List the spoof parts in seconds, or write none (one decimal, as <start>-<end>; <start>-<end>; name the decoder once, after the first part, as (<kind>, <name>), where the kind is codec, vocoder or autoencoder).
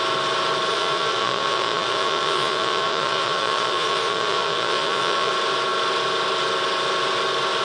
0.7-5.3 (vocoder, Vocos)